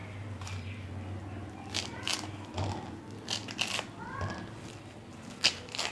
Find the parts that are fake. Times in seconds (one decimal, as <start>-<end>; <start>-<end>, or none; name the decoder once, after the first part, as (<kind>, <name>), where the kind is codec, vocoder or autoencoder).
none